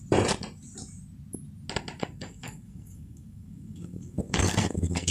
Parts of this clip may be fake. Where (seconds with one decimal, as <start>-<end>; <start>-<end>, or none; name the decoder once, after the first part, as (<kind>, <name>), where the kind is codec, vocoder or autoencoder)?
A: 2.0-5.1 (codec, SNAC)